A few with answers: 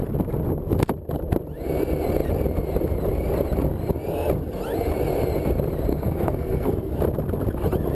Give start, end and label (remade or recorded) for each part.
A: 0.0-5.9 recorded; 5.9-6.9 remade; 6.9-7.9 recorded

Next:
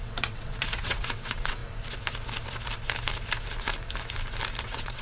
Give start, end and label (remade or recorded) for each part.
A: 0.0-1.6 remade; 1.6-4.6 recorded; 4.6-5.0 remade

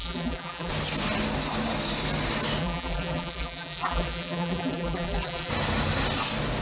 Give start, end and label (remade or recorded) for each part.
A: 0.0-0.7 remade; 0.7-2.6 recorded; 2.6-5.5 remade; 5.5-6.6 recorded

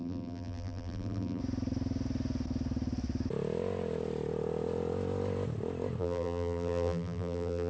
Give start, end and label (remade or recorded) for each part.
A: 0.0-1.4 remade; 1.4-6.0 recorded; 6.0-7.7 remade

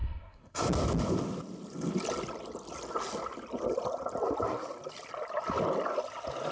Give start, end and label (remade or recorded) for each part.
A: 0.0-0.6 remade; 0.6-6.5 recorded

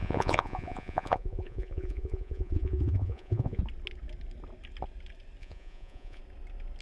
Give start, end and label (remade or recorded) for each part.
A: 0.0-3.6 remade; 3.6-5.4 recorded; 5.4-6.2 remade; 6.2-6.8 recorded

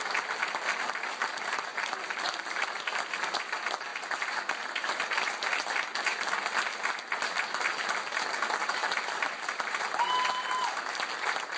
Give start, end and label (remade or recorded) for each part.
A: 0.0-3.9 recorded; 3.9-4.9 remade; 4.9-8.8 recorded; 8.8-9.9 remade; 9.9-11.6 recorded

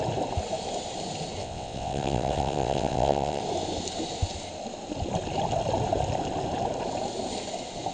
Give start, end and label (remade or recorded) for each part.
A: 0.0-1.4 recorded; 1.4-3.4 remade; 3.4-7.9 recorded